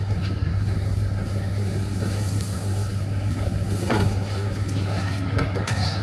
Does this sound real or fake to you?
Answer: fake